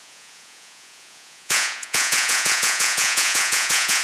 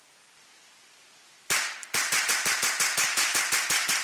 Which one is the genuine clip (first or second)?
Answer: second